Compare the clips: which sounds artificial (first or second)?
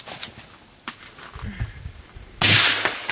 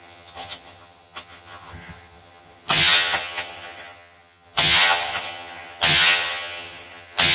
second